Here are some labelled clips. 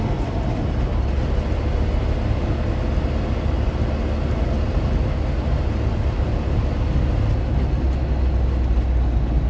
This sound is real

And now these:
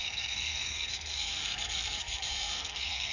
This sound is fake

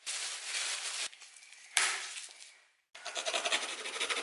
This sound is real